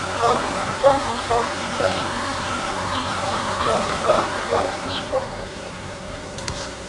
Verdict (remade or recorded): remade